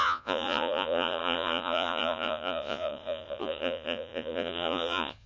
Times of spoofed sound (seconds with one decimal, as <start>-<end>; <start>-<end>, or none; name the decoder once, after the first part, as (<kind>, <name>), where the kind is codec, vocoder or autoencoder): 0.0-5.3 (vocoder, Vocos)